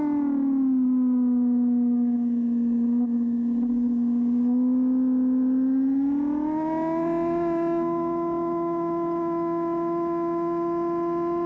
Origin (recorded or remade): recorded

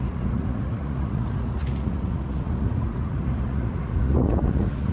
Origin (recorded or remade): remade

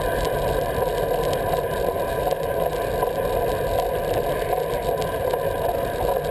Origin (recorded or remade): recorded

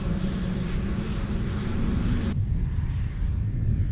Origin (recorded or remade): recorded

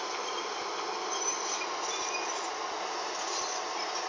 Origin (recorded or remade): recorded